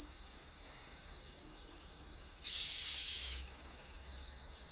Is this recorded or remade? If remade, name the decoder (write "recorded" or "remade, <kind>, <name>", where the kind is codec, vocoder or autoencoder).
remade, codec, DAC